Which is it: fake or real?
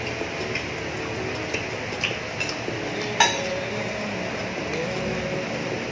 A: real